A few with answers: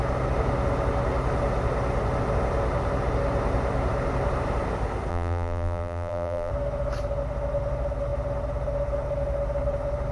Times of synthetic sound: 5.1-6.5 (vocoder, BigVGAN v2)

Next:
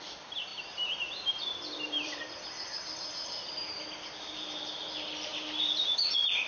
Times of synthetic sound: 0.5-3.5 (vocoder, BigVGAN v2)

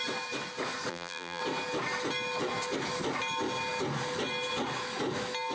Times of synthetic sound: 0.9-1.4 (vocoder, BigVGAN v2)

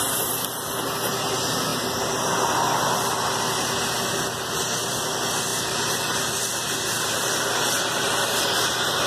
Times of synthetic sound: 5.5-6.3 (vocoder, BigVGAN v2)

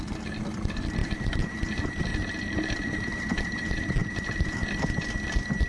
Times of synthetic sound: 1.0-1.5 (vocoder, BigVGAN v2); 2.1-3.4